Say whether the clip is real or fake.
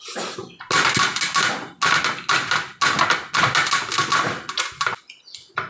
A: real